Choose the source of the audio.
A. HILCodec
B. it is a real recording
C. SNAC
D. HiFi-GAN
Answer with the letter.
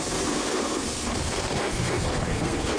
C